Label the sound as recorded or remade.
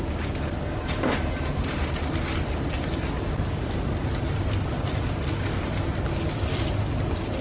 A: recorded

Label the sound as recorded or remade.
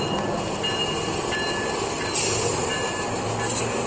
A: recorded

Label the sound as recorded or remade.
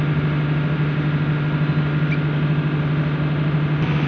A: recorded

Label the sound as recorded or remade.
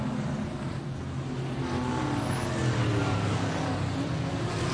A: recorded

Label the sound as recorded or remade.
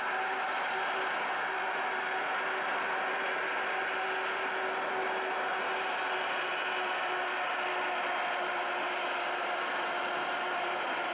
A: recorded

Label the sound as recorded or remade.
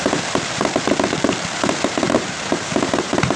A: remade